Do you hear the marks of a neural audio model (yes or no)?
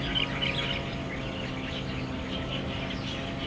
no